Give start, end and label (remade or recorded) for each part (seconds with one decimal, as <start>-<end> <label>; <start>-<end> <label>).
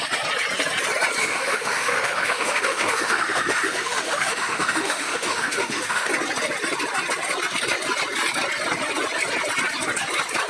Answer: 0.0-1.2 recorded; 1.2-6.1 remade; 6.1-10.5 recorded